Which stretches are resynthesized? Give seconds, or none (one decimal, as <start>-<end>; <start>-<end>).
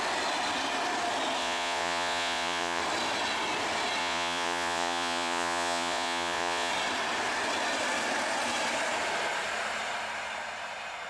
1.4-2.8; 4.0-6.7